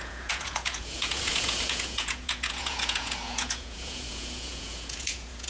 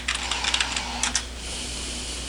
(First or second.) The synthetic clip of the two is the first